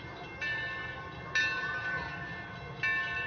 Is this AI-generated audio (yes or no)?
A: no